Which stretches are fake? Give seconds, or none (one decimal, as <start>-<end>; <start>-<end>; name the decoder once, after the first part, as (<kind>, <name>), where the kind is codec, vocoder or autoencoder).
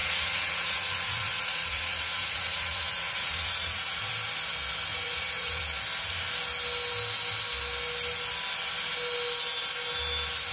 0.0-4.1 (vocoder, Vocos); 4.9-5.6